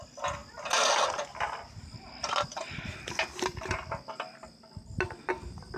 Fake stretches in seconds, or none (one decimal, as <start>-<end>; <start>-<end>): none